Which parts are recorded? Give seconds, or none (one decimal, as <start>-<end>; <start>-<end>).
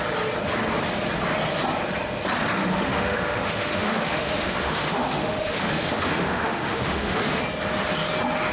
0.0-2.6; 7.4-8.5